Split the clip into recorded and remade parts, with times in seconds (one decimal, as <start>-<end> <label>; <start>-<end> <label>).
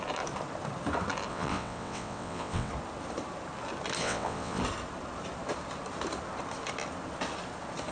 0.0-1.3 recorded; 1.3-2.7 remade; 2.7-4.0 recorded; 4.0-4.6 remade; 4.6-7.9 recorded